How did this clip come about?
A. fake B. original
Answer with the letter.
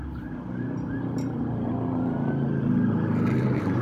B